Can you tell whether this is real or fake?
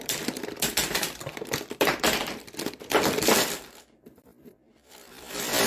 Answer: fake